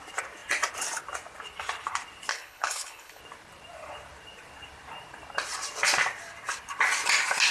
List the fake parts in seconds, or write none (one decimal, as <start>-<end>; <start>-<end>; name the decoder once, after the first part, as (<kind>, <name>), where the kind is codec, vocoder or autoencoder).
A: 2.3-3.2 (codec, HILCodec)